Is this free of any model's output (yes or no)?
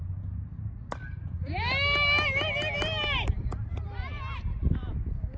yes